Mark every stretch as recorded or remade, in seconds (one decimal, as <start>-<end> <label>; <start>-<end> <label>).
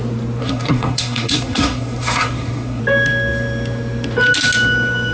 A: 0.0-0.4 recorded; 0.4-2.8 remade; 2.8-5.1 recorded